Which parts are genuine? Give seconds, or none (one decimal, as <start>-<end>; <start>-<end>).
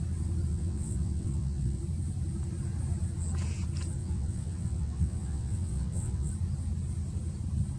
0.0-0.5; 1.8-4.0; 6.3-7.8